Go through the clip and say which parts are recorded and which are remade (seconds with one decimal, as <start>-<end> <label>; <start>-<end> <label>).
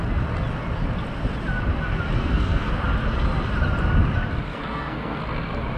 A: 0.0-2.2 recorded; 2.2-2.7 remade; 2.7-4.5 recorded; 4.5-5.2 remade; 5.2-5.8 recorded